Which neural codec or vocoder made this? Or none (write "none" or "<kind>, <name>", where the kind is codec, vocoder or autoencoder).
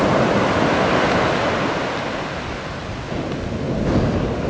none